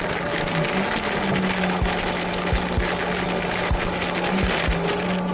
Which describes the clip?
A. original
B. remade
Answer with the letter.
A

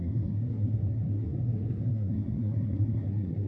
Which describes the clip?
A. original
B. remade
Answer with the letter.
B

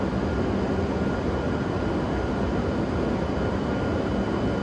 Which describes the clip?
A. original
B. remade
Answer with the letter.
A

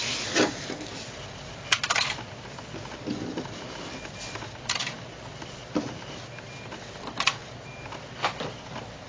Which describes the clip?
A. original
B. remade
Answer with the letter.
A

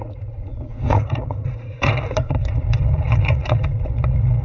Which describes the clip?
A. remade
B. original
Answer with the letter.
A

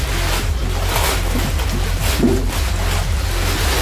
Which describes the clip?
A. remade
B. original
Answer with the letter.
B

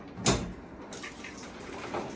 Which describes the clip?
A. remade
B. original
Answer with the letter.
B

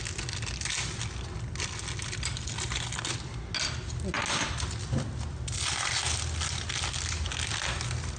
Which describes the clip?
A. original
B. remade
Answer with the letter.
A